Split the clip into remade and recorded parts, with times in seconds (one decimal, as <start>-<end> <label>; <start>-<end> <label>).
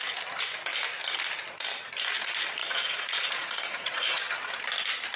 0.0-2.6 recorded; 2.6-4.3 remade; 4.3-5.2 recorded